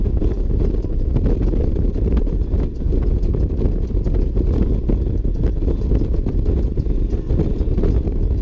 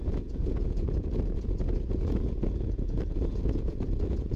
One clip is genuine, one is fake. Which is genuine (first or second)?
first